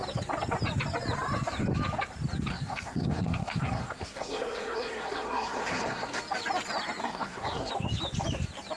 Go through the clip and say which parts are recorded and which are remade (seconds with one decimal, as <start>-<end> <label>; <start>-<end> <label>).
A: 0.0-2.5 recorded; 2.5-6.2 remade; 6.2-7.0 recorded; 7.0-7.7 remade; 7.7-8.8 recorded